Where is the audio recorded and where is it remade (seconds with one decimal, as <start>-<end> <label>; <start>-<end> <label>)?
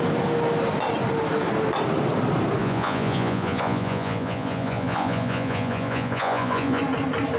0.0-2.6 recorded; 2.6-6.8 remade; 6.8-7.4 recorded